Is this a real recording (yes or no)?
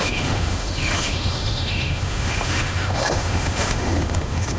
no